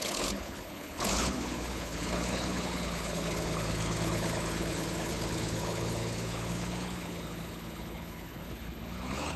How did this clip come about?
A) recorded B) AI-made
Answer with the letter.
B